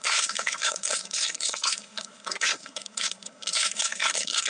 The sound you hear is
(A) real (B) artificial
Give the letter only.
B